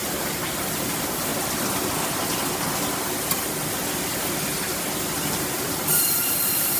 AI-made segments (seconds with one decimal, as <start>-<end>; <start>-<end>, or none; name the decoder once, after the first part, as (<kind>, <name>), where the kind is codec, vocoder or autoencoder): 0.6-1.3 (vocoder, BigVGAN v2); 5.4-6.8